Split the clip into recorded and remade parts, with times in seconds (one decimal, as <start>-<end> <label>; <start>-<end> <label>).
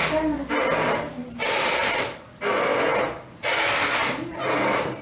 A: 0.0-2.9 remade; 2.9-3.7 recorded; 3.7-5.0 remade